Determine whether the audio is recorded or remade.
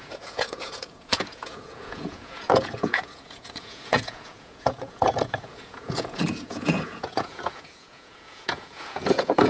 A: remade